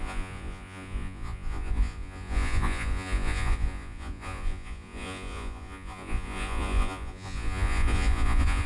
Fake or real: fake